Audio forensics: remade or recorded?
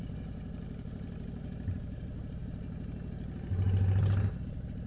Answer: recorded